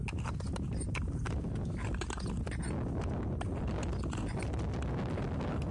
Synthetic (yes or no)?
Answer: no